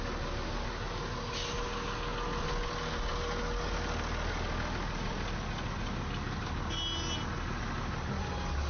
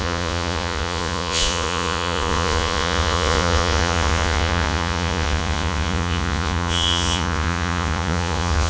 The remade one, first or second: second